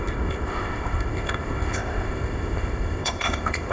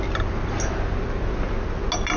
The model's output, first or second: first